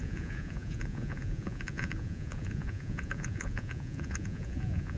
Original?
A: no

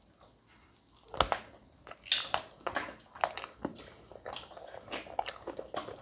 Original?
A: yes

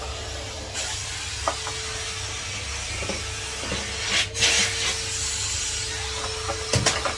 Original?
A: yes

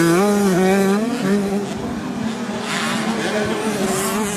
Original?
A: yes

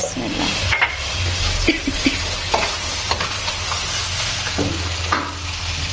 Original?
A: yes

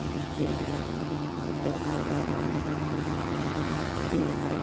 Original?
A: no